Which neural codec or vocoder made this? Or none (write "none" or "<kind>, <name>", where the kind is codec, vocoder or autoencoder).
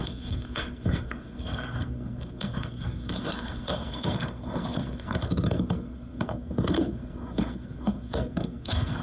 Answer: codec, SNAC